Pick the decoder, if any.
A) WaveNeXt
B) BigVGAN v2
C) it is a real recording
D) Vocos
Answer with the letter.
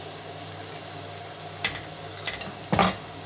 C